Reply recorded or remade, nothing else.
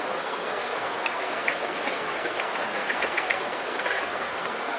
remade